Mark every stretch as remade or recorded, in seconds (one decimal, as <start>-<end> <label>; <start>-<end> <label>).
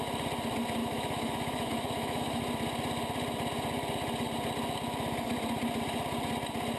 0.0-0.8 recorded; 0.8-2.4 remade; 2.4-6.8 recorded